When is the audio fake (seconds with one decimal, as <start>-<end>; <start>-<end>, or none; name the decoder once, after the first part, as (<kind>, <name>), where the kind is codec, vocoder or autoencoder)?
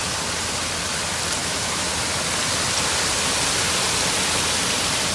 1.4-1.9 (autoencoder, DAC-VAE)